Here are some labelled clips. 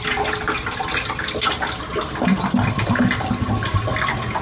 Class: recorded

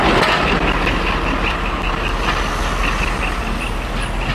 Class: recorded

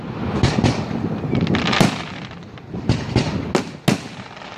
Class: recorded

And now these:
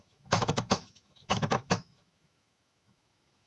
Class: remade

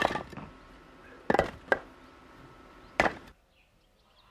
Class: recorded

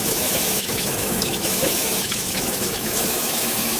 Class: remade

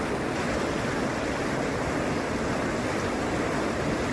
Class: recorded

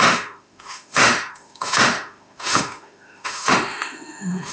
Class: remade